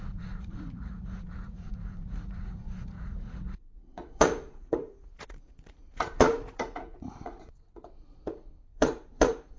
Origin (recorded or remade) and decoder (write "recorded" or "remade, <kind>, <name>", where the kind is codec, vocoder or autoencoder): remade, vocoder, Vocos